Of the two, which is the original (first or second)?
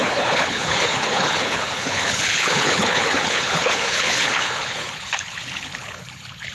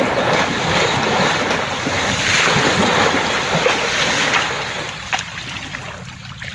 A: second